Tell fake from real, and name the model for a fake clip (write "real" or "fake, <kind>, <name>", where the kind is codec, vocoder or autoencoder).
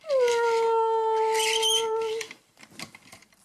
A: real